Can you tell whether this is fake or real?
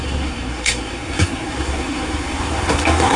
fake